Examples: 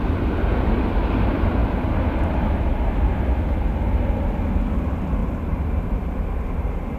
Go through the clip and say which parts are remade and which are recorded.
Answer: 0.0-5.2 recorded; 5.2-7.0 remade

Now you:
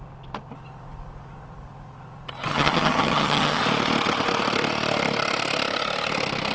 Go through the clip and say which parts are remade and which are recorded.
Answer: 0.0-2.5 recorded; 2.5-3.6 remade; 3.6-6.5 recorded